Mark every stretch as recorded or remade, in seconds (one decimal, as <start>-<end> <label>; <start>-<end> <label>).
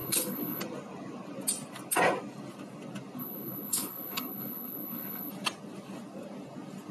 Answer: 0.0-0.6 remade; 0.6-3.2 recorded; 3.2-5.3 remade; 5.3-6.9 recorded